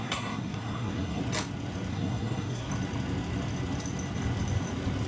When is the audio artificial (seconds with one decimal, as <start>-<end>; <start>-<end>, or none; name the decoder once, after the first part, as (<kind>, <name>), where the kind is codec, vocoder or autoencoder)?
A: 0.0-1.2 (codec, SNAC); 1.9-2.7